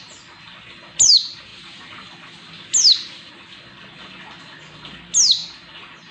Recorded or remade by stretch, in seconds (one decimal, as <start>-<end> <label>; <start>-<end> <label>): 0.0-6.1 recorded